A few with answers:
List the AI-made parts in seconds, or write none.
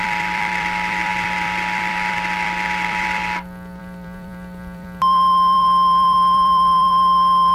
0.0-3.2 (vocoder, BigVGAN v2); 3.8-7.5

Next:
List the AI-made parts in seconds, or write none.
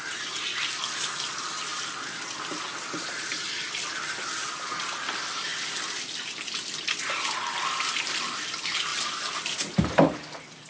none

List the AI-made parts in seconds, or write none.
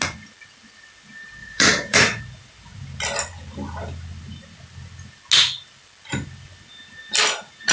1.4-2.2 (vocoder, Vocos)